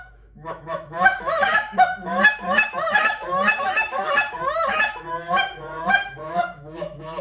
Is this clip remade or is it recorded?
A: remade